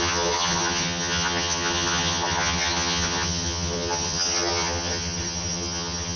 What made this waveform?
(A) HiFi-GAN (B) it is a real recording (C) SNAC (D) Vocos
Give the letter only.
A